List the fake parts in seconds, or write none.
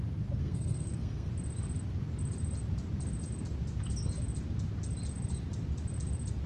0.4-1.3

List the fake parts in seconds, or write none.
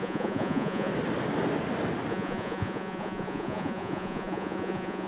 0.0-0.9; 2.1-5.1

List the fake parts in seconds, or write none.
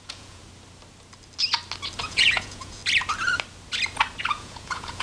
0.0-0.4; 2.0-2.8; 4.2-5.0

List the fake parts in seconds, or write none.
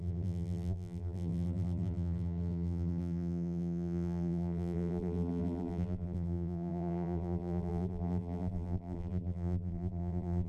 0.0-10.5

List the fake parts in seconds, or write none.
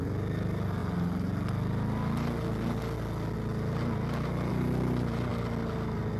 none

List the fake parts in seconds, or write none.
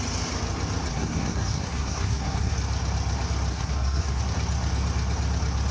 0.9-2.5; 3.5-4.2